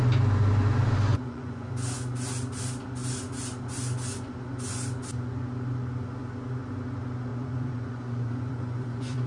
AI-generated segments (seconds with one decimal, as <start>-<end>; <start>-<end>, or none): 1.1-1.7; 7.3-9.3